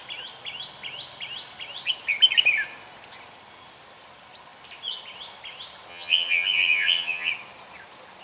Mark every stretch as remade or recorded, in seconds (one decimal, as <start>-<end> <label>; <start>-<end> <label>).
0.0-5.9 recorded; 5.9-7.3 remade; 7.3-8.2 recorded